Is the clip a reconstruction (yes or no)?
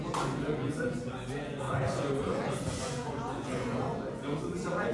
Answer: yes